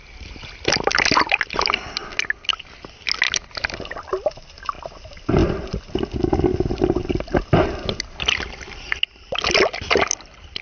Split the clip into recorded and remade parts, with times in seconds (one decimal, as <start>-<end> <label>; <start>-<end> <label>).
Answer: 0.0-10.6 recorded